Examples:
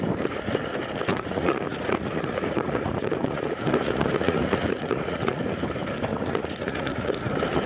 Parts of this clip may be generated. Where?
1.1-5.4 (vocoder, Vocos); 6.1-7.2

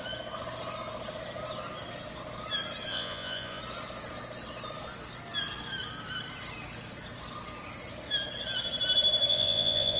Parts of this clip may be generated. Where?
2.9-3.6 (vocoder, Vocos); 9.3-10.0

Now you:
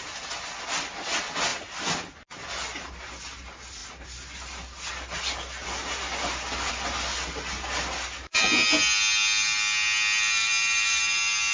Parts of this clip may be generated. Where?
none

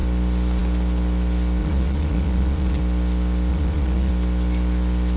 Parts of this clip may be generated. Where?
1.6-2.8 (vocoder, Vocos); 3.5-4.1

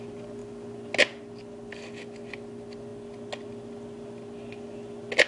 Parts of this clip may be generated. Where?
none

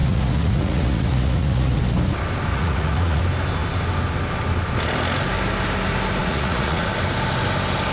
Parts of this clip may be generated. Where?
0.0-1.8 (vocoder, Vocos); 2.5-3.2; 6.2-6.9

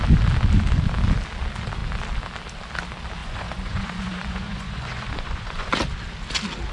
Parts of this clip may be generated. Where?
3.2-5.7 (vocoder, Vocos)

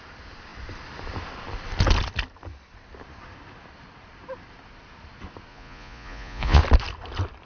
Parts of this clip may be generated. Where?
5.5-6.6 (vocoder, Vocos)